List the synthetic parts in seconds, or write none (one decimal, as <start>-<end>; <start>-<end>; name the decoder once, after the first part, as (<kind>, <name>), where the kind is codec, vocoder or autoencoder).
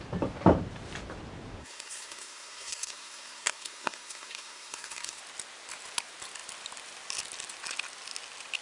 1.6-5.2 (codec, SNAC)